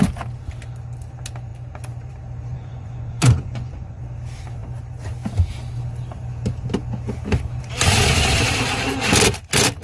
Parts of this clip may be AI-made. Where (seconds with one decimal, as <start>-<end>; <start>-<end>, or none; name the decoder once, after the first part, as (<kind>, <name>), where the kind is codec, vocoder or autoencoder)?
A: 2.5-4.0 (vocoder, Vocos)